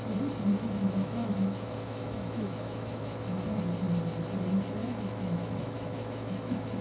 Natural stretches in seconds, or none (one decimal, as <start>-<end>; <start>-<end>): 0.0-0.5; 3.6-4.8